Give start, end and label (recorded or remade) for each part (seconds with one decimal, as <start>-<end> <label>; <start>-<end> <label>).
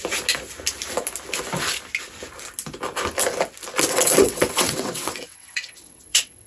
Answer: 0.0-3.9 recorded; 3.9-6.5 remade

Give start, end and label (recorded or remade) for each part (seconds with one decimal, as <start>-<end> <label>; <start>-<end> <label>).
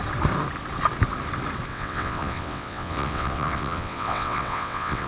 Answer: 0.0-1.7 recorded; 1.7-5.1 remade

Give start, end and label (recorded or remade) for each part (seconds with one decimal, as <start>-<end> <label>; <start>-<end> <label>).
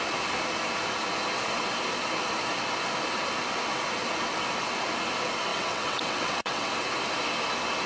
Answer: 0.0-5.5 recorded; 5.5-6.7 remade; 6.7-7.9 recorded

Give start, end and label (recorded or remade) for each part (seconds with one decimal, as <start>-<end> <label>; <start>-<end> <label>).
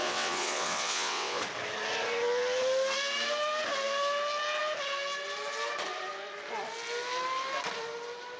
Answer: 0.0-1.4 remade; 1.4-8.4 recorded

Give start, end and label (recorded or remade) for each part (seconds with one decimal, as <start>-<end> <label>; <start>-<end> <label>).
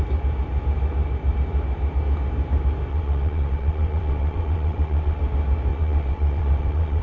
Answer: 0.0-2.9 recorded; 2.9-5.2 remade; 5.2-5.7 recorded; 5.7-7.0 remade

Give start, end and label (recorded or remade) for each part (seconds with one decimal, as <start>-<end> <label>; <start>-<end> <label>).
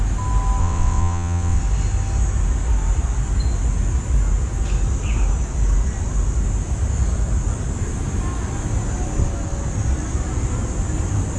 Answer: 0.0-0.6 recorded; 0.6-1.6 remade; 1.6-11.4 recorded